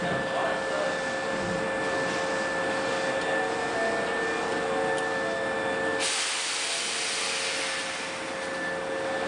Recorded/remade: recorded